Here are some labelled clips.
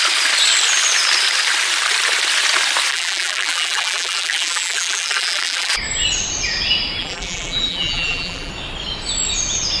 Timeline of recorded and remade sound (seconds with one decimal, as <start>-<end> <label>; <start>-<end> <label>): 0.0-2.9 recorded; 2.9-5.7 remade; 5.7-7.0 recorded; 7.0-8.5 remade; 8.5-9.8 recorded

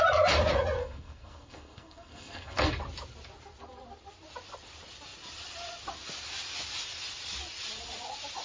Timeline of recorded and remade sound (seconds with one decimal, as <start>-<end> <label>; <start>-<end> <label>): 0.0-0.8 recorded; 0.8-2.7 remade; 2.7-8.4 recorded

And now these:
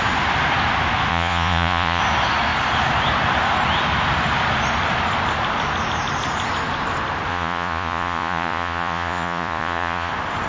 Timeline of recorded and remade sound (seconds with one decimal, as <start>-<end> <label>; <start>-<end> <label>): 0.0-1.1 recorded; 1.1-2.0 remade; 2.0-7.3 recorded; 7.3-10.1 remade; 10.1-10.5 recorded

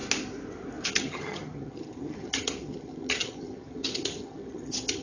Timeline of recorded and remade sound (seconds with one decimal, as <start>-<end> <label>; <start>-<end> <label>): 0.0-0.9 recorded; 0.9-5.0 remade

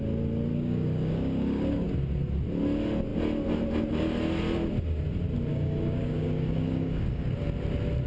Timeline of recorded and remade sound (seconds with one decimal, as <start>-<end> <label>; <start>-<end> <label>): 0.0-0.5 recorded; 0.5-1.9 remade; 1.9-5.5 recorded; 5.5-7.3 remade; 7.3-8.1 recorded

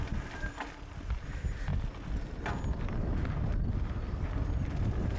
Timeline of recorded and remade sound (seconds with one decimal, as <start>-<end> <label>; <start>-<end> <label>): 0.0-5.2 recorded

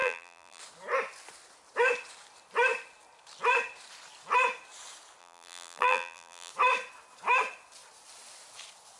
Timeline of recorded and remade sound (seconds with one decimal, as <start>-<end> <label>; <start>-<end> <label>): 0.0-0.6 remade; 0.6-5.2 recorded; 5.2-6.5 remade; 6.5-9.0 recorded

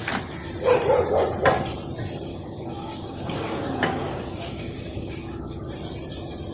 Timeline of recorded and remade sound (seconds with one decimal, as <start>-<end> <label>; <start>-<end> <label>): 0.0-2.3 recorded; 2.3-5.7 remade; 5.7-6.5 recorded